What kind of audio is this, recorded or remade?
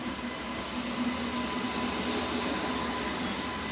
recorded